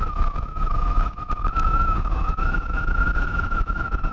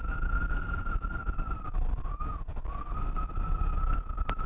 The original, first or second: second